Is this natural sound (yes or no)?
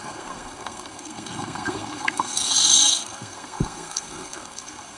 no